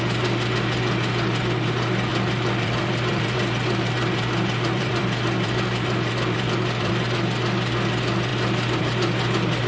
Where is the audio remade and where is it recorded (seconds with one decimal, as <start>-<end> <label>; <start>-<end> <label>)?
0.0-2.1 recorded; 2.1-6.9 remade; 6.9-9.7 recorded